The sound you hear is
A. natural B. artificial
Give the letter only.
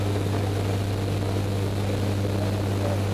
A